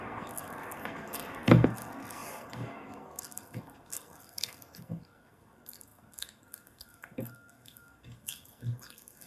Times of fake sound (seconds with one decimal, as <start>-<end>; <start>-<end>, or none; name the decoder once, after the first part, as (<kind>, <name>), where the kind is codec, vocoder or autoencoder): 0.0-9.3 (codec, SNAC)